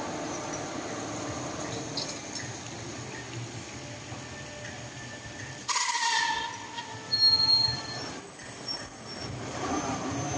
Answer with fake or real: real